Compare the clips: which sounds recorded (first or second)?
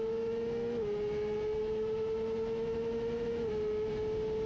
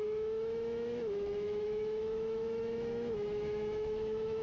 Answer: first